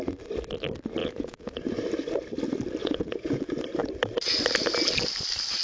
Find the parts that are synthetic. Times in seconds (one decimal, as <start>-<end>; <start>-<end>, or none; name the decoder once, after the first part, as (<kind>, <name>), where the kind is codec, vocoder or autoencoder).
1.0-1.7 (vocoder, Vocos); 2.8-3.5